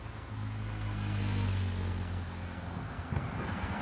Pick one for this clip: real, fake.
fake